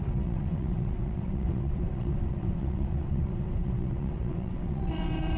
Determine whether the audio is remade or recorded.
remade